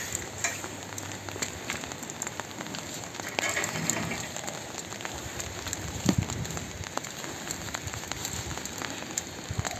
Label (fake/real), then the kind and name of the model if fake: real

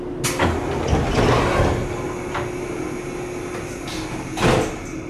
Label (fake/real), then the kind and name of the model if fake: real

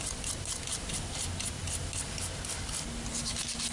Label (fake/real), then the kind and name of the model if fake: real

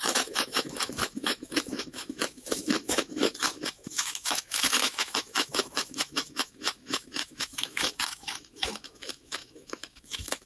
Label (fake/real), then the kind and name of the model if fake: fake, autoencoder, DAC-VAE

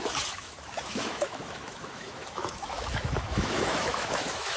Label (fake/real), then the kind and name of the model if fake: fake, autoencoder, DAC-VAE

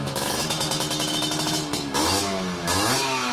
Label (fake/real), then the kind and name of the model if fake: fake, autoencoder, DAC-VAE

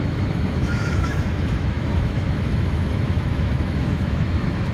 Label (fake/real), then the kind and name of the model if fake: fake, autoencoder, DAC-VAE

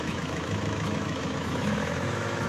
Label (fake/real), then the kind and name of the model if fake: fake, autoencoder, DAC-VAE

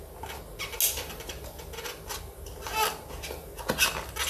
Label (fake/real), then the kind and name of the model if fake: real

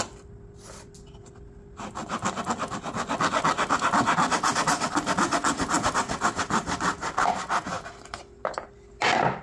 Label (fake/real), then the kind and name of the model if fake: real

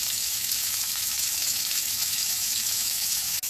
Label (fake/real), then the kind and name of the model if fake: fake, autoencoder, DAC-VAE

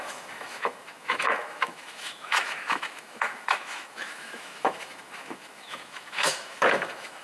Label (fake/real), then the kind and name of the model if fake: fake, autoencoder, DAC-VAE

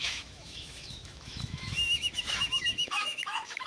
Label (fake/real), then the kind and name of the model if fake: fake, autoencoder, DAC-VAE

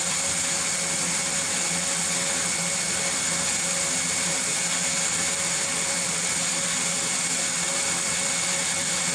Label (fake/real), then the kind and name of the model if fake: real